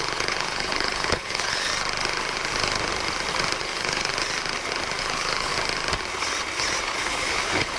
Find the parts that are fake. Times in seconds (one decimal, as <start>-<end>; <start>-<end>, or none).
0.0-1.7; 3.6-4.1; 5.0-5.5; 6.8-7.8